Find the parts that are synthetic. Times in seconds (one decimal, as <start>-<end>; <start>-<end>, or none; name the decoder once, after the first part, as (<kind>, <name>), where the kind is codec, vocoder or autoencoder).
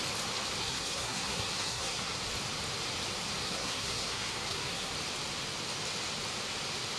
0.6-2.2 (codec, SNAC); 3.4-4.9